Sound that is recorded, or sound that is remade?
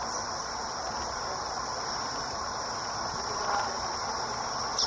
recorded